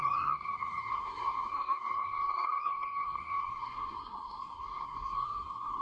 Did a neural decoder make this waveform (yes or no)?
yes